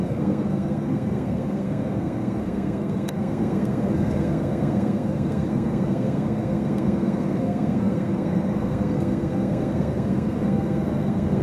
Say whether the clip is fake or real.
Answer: fake